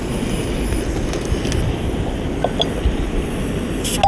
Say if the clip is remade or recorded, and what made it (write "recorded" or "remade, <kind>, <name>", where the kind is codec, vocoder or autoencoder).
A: recorded